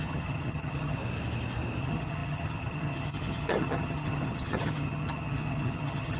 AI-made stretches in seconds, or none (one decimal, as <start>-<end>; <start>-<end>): 0.0-1.0; 1.8-6.2